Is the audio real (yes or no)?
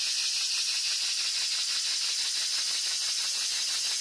yes